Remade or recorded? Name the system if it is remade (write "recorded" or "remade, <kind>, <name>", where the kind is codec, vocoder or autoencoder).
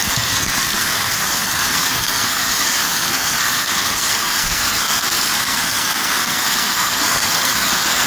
remade, codec, SNAC